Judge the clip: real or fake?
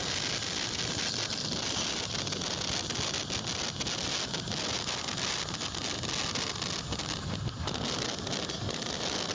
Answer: real